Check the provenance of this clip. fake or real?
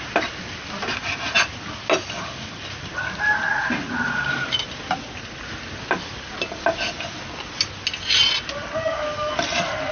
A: real